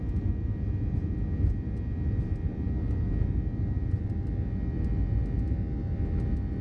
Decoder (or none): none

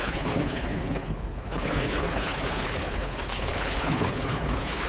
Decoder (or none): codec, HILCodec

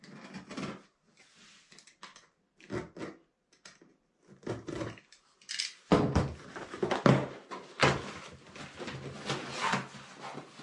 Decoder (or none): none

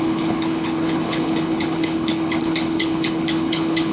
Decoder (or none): codec, HILCodec